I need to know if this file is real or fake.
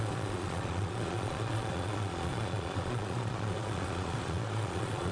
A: fake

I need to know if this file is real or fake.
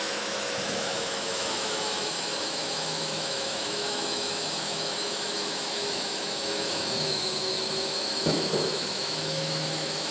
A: fake